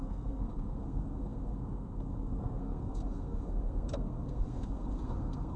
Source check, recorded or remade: remade